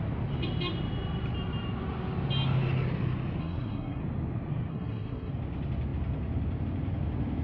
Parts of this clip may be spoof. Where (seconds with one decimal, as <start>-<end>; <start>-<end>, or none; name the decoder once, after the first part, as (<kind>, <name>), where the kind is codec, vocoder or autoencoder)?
3.4-4.0 (codec, SNAC); 4.7-5.3